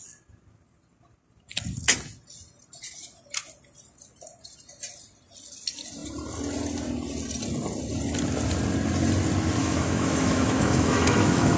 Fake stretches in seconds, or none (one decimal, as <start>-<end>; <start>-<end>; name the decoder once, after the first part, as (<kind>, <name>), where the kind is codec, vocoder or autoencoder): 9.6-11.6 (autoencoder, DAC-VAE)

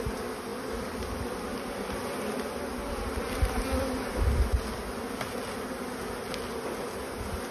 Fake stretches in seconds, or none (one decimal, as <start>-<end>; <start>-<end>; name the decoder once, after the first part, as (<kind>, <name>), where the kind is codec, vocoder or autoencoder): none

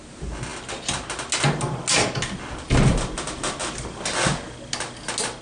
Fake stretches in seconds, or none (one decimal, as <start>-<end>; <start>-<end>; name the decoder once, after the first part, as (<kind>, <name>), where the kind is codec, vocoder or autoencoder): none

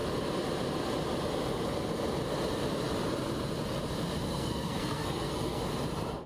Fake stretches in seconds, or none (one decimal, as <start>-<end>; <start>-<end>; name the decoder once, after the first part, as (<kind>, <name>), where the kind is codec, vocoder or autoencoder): 4.3-5.6 (codec, SNAC)